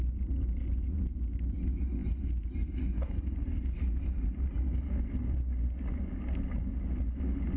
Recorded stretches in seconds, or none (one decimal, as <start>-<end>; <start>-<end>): 0.0-7.6